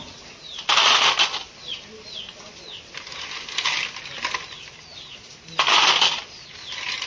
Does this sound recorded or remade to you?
recorded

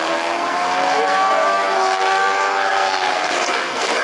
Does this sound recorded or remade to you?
remade